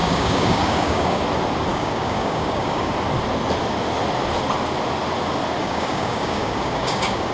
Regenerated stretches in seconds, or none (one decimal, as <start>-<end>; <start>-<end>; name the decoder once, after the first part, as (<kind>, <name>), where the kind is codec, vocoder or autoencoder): 0.0-1.2 (codec, DAC); 1.7-2.9; 5.6-7.3